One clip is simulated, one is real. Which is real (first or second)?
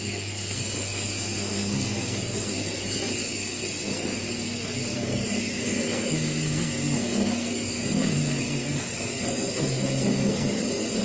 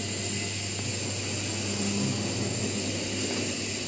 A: second